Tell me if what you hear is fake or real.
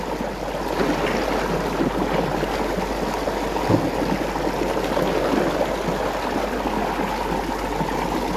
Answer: real